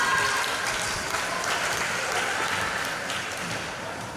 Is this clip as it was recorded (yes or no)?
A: yes